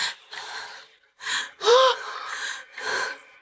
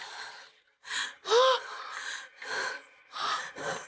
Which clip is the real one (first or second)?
second